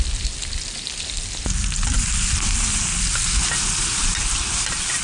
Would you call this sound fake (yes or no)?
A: no